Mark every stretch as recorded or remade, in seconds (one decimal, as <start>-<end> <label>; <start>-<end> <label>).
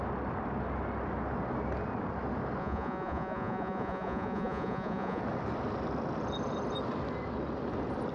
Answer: 0.0-2.6 recorded; 2.6-5.2 remade; 5.2-8.1 recorded